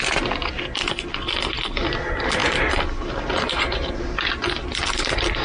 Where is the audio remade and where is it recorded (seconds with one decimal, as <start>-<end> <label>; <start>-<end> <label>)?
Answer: 0.0-5.4 recorded